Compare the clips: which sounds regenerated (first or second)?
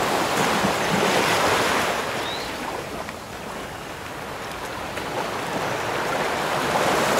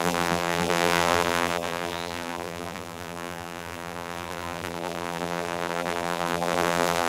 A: second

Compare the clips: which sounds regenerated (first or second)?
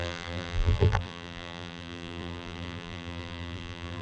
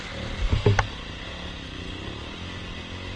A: first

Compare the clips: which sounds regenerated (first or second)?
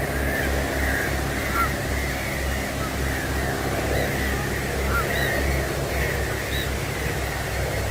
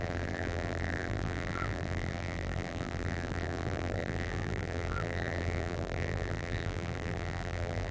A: second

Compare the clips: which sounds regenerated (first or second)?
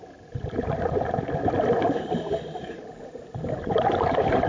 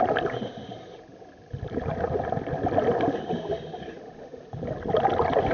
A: first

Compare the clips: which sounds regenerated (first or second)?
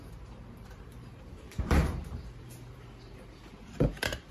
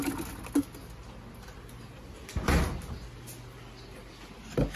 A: first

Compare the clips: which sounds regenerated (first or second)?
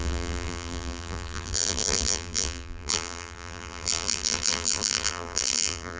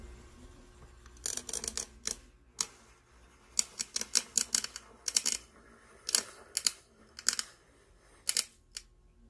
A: first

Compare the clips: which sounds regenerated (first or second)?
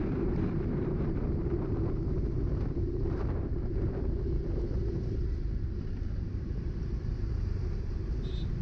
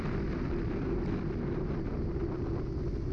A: first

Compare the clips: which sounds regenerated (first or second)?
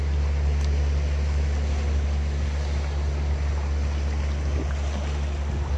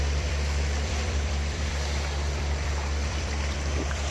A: second